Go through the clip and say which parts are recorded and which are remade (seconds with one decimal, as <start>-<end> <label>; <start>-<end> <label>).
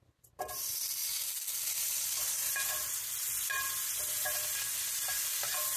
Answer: 0.0-5.8 recorded